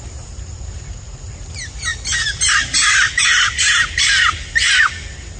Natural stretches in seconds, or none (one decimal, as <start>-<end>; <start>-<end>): 1.9-5.4